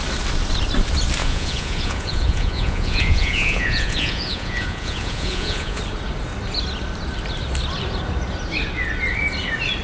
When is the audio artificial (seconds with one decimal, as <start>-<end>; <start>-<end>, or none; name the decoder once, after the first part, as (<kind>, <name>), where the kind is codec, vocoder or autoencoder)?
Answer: 1.2-5.8 (vocoder, Vocos)